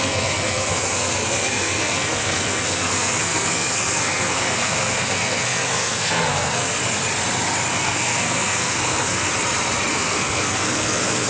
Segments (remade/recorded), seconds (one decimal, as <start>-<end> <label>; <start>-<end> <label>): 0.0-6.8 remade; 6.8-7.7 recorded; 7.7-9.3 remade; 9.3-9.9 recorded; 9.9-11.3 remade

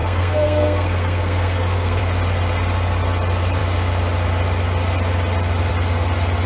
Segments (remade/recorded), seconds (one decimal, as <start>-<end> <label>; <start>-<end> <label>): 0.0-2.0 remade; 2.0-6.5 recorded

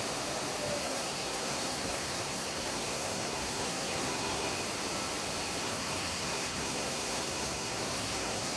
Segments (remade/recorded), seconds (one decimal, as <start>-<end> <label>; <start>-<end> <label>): 0.0-0.8 recorded; 0.8-4.5 remade; 4.5-5.6 recorded; 5.6-8.6 remade

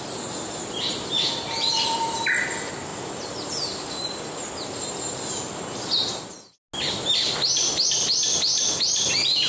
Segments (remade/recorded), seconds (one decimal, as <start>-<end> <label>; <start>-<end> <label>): 0.0-9.5 recorded

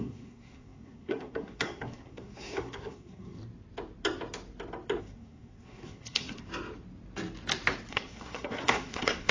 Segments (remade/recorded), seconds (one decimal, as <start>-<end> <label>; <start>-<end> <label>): 0.0-3.4 remade; 3.4-5.0 recorded; 5.0-6.5 remade; 6.5-7.9 recorded; 7.9-9.3 remade

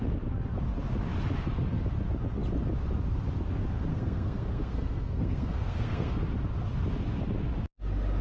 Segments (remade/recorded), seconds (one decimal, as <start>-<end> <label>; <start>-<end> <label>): 0.0-3.9 recorded; 3.9-6.1 remade; 6.1-8.2 recorded

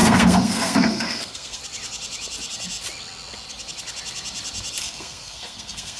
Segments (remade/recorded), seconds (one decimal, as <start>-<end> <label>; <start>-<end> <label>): 0.0-1.6 remade; 1.6-4.8 recorded; 4.8-6.0 remade